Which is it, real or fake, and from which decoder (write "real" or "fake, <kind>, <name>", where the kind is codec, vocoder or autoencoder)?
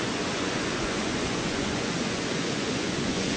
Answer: fake, vocoder, Vocos